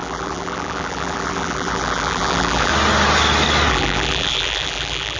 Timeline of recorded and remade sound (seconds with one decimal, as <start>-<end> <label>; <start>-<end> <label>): 0.0-2.7 remade; 2.7-3.7 recorded; 3.7-5.2 remade